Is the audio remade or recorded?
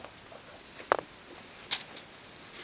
recorded